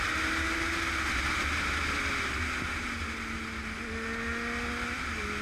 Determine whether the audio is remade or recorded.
recorded